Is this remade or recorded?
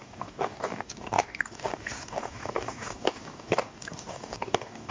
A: remade